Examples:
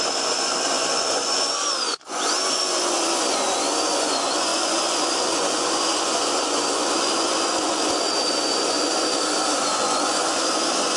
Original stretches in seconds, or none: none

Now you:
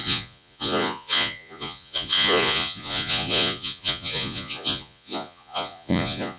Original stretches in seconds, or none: none

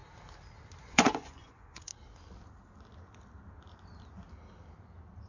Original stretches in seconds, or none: 0.0-0.8; 1.9-5.3

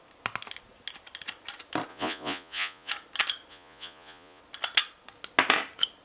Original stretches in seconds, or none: 0.0-1.9; 2.9-3.5; 4.4-6.0

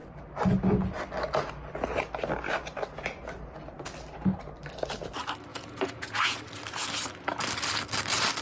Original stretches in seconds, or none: 0.0-5.5; 6.4-8.4

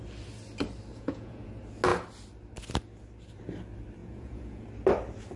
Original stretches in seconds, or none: 0.0-0.9; 1.5-4.0; 4.6-5.4

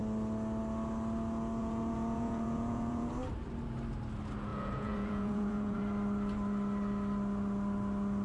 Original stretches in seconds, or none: 0.0-1.6; 3.1-4.5; 5.8-8.2